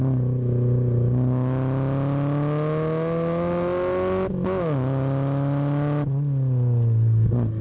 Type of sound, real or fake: real